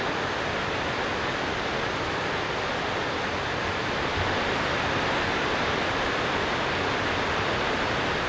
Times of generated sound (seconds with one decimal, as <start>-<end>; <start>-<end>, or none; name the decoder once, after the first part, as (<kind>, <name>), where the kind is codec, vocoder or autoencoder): none